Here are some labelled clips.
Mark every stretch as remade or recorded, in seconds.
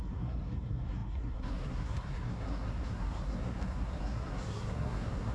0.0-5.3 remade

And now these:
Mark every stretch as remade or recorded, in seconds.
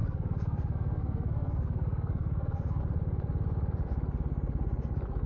0.0-2.8 remade; 2.8-5.3 recorded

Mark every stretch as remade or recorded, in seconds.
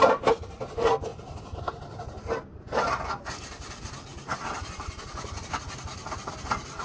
0.0-6.8 recorded